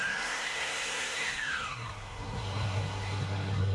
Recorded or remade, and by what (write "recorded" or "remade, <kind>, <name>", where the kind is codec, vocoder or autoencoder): remade, codec, SNAC